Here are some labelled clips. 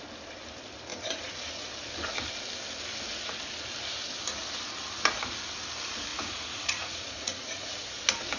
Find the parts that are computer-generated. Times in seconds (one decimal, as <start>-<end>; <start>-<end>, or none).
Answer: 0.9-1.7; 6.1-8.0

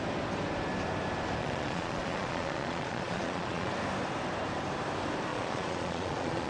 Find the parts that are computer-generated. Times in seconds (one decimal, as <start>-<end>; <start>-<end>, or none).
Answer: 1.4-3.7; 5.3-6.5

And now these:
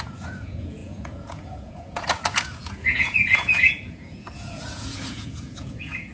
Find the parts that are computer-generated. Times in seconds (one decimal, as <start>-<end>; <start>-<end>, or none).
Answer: 0.0-6.1

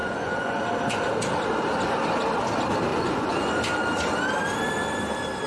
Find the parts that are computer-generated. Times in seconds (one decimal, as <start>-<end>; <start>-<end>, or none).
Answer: 0.0-0.6; 2.9-3.5

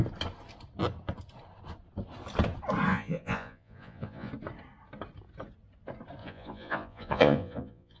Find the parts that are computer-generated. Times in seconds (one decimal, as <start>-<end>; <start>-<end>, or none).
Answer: 2.9-4.3; 6.2-8.0

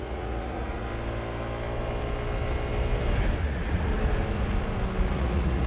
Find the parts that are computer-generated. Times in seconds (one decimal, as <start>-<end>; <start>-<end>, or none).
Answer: 0.0-0.9; 3.4-3.9; 5.1-5.7